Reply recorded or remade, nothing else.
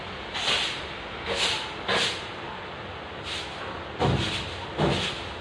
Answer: recorded